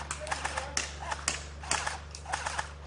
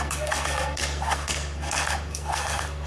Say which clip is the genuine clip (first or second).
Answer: first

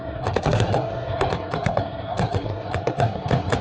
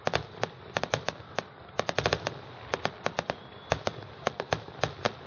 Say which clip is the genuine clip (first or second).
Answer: second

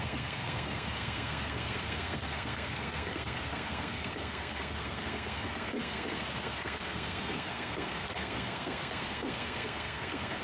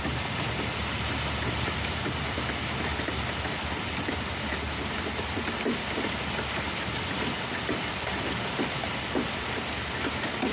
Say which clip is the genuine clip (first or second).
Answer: second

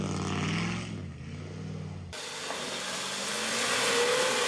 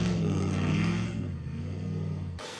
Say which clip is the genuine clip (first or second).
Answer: first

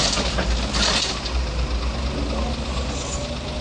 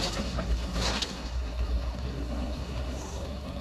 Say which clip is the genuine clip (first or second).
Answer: first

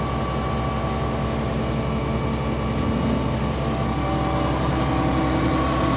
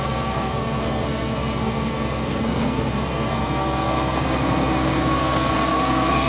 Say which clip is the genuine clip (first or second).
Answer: first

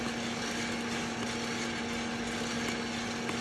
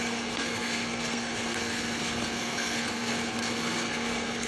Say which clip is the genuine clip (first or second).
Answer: first